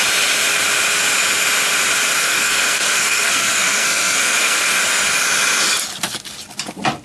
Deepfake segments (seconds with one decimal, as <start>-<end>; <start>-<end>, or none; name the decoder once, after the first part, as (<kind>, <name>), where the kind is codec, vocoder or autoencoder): 2.2-4.8 (codec, SNAC)